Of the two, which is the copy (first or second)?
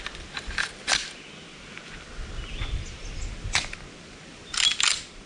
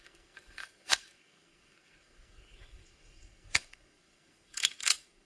second